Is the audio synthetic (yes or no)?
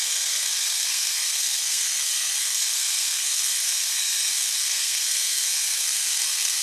yes